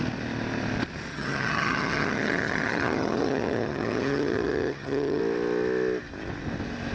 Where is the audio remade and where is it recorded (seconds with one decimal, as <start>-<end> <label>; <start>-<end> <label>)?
0.0-1.1 recorded; 1.1-5.2 remade; 5.2-6.9 recorded